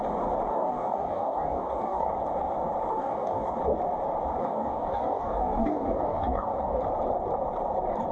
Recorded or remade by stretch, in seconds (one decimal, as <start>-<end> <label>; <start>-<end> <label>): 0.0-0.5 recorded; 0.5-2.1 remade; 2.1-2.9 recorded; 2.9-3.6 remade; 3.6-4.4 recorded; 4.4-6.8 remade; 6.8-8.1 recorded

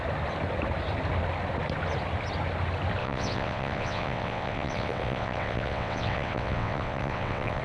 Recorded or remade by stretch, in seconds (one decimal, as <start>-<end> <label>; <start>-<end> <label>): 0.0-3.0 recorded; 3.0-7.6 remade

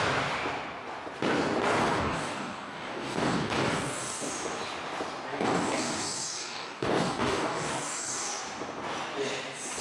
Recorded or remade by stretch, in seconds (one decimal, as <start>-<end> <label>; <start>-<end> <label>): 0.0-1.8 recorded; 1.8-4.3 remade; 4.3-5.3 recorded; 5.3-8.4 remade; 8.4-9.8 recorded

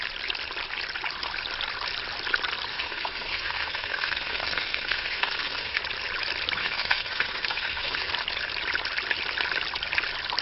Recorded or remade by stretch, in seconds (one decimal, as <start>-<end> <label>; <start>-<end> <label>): 0.0-2.7 recorded; 2.7-5.8 remade; 5.8-6.6 recorded; 6.6-8.1 remade; 8.1-10.4 recorded

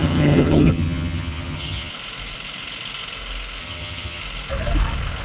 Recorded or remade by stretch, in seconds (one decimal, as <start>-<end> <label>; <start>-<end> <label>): 0.0-1.9 remade; 1.9-3.6 recorded; 3.6-4.2 remade; 4.2-5.2 recorded

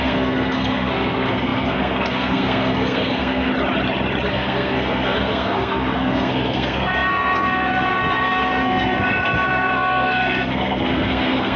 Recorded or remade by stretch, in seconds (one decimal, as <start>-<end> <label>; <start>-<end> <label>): 0.0-3.5 remade; 3.5-4.3 recorded; 4.3-11.6 remade

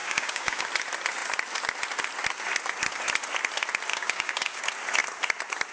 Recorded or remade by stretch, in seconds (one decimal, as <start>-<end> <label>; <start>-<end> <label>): 0.0-0.7 remade; 0.7-3.9 recorded; 3.9-4.6 remade; 4.6-5.7 recorded

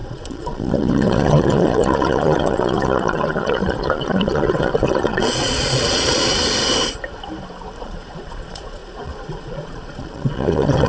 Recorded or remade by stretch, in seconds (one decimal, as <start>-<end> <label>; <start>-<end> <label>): 0.0-6.4 remade; 6.4-7.8 recorded; 7.8-10.9 remade